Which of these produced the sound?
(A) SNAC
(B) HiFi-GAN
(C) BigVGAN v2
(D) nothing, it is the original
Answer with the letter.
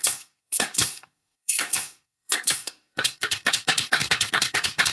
A